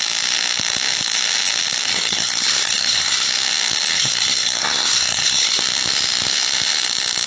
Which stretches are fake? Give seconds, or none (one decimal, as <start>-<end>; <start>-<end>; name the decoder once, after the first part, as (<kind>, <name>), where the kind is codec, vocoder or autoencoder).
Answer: 1.9-3.3 (codec, SNAC); 3.9-5.6